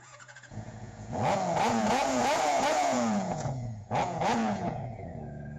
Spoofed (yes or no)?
yes